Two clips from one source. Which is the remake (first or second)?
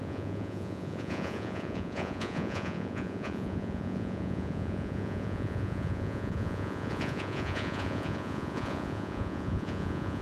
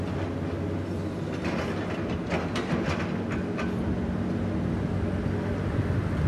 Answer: first